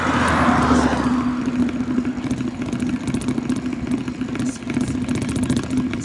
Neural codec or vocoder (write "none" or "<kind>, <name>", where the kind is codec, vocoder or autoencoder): none